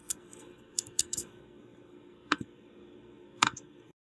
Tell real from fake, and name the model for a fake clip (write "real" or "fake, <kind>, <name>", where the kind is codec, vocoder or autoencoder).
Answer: fake, codec, SNAC